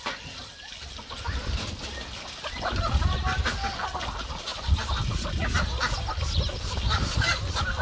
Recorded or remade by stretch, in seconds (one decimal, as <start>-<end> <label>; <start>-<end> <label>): 0.0-7.8 recorded